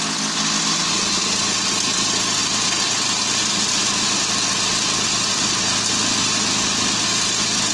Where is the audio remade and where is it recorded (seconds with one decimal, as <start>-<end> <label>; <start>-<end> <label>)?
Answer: 0.0-2.4 recorded; 2.4-5.4 remade; 5.4-7.7 recorded